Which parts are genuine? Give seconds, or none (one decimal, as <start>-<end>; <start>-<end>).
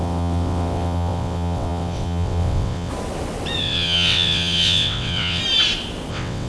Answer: 2.9-3.6; 5.4-6.1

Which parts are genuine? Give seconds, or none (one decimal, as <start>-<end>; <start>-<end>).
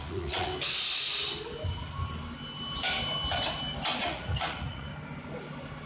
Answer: 0.5-4.0; 4.9-5.9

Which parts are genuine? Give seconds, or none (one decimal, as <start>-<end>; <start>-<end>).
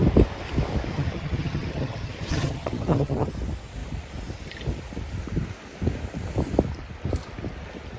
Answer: 0.0-0.9; 3.3-8.0